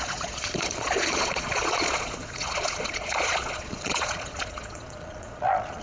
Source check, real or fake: fake